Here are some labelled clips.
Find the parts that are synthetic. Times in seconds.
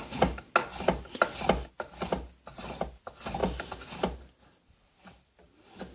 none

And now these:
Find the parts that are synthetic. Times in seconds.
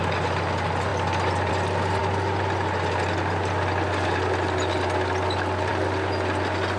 none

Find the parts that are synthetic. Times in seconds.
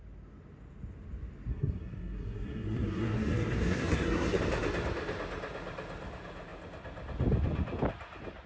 1.5-4.4 (codec, SNAC)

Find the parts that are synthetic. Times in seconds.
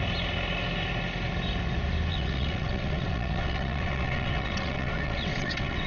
2.1-5.9 (vocoder, WaveNeXt)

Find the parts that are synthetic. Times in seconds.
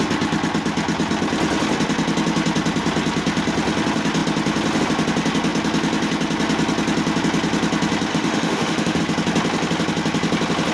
8.1-9.0 (autoencoder, DAC-VAE)